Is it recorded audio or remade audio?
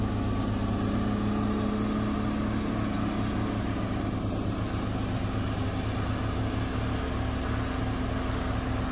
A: recorded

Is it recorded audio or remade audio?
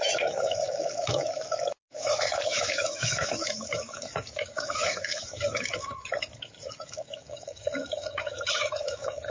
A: remade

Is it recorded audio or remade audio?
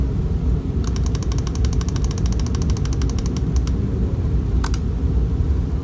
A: recorded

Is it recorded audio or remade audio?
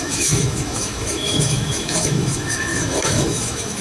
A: remade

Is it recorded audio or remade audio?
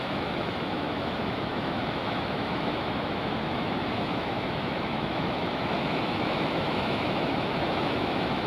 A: remade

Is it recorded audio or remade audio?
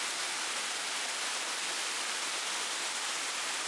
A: recorded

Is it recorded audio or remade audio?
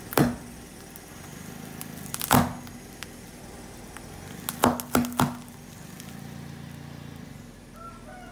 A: recorded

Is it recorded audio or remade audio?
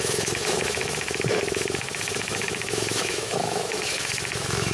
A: remade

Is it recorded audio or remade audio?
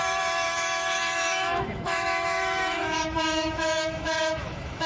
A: remade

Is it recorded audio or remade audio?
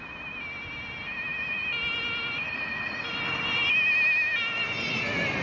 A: recorded